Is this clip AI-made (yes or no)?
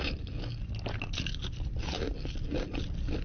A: no